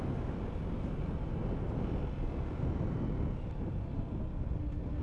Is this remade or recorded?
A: recorded